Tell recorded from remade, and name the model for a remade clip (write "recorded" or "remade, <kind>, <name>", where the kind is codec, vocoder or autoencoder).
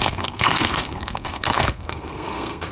remade, codec, SNAC